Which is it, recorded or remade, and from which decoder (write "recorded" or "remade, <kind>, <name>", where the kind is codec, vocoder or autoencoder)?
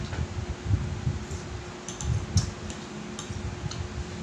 recorded